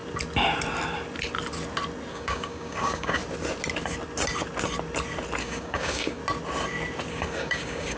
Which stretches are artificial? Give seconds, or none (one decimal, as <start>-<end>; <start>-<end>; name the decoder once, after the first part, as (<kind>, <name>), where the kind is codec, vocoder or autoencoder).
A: 2.1-3.2 (codec, DAC); 5.4-6.2; 7.1-8.0